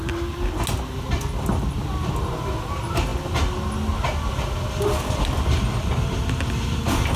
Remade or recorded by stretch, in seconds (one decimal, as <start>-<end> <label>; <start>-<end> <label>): 0.0-7.2 recorded